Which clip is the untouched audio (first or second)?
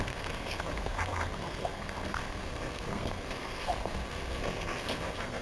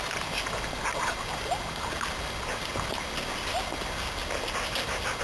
second